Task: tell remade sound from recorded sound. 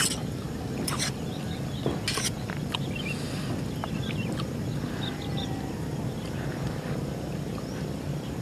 recorded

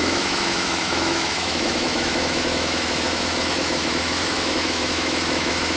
remade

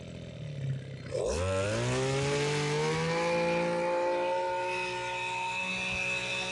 recorded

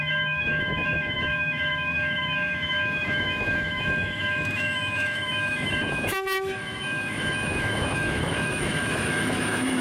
remade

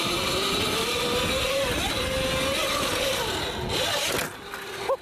recorded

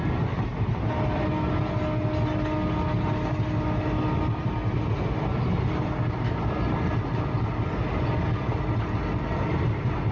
recorded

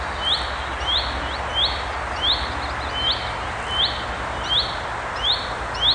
recorded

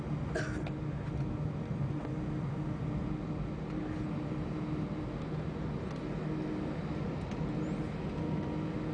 recorded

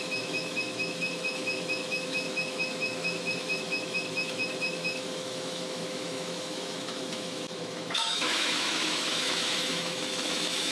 remade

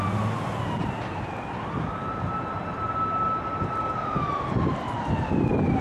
recorded